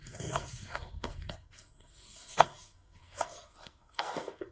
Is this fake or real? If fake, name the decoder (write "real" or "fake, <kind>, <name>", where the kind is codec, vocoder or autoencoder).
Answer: fake, codec, SNAC